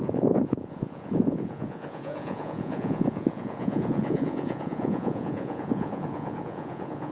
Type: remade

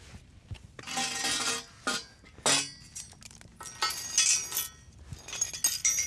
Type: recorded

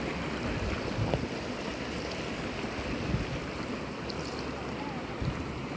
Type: recorded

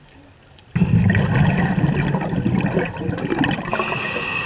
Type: recorded